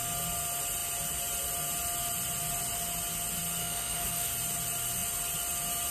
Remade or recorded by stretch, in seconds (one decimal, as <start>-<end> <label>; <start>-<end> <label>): 0.0-3.6 recorded; 3.6-4.3 remade; 4.3-5.9 recorded